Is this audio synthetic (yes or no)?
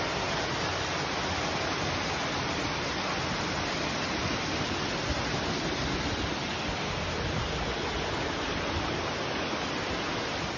no